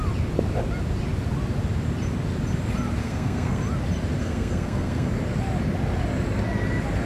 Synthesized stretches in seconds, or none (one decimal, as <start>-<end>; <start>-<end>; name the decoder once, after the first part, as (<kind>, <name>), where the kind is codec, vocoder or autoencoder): 3.0-3.6 (codec, SNAC); 4.2-5.1